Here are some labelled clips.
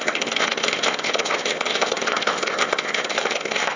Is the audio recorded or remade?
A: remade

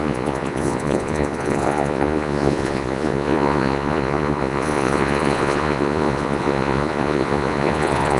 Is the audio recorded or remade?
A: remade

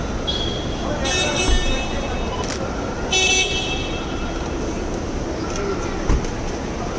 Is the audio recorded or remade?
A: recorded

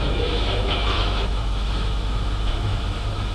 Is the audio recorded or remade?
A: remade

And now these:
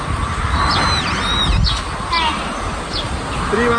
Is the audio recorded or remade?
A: recorded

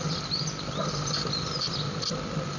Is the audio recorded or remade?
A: recorded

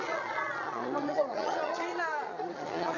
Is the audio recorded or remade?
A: remade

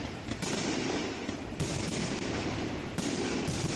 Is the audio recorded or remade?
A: remade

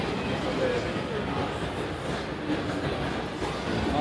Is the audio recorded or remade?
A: recorded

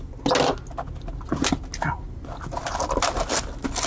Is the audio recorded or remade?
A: recorded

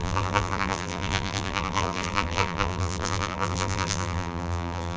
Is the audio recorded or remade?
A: remade